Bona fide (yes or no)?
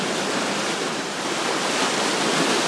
yes